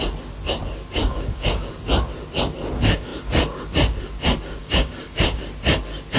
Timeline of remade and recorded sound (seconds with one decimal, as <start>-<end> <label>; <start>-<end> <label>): 0.0-1.0 recorded; 1.0-1.7 remade; 1.7-4.6 recorded; 4.6-5.4 remade; 5.4-6.2 recorded